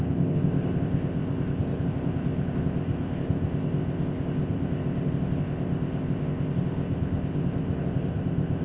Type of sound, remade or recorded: remade